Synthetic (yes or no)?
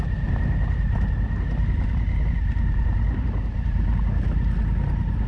no